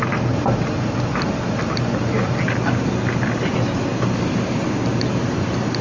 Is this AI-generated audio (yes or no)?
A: no